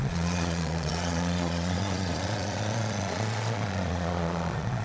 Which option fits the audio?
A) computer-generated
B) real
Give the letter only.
A